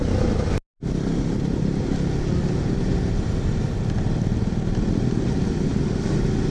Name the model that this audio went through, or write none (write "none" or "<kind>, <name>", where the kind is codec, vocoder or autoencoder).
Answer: none